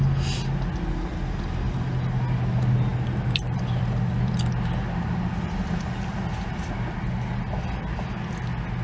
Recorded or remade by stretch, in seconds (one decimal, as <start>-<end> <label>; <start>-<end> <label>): 0.0-2.9 recorded; 2.9-4.4 remade; 4.4-8.8 recorded